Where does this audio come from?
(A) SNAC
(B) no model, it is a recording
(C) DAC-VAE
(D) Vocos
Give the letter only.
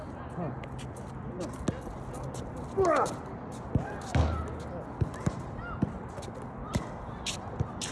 B